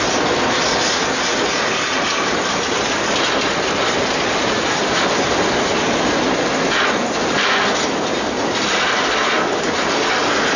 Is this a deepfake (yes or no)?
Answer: no